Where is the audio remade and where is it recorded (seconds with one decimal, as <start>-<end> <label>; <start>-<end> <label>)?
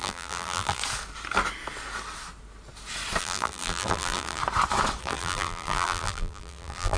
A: 0.0-0.8 remade; 0.8-3.2 recorded; 3.2-4.4 remade; 4.4-5.0 recorded; 5.0-7.0 remade